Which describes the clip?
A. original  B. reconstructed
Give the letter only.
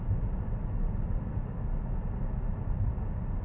A